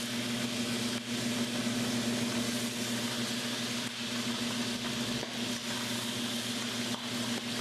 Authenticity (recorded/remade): recorded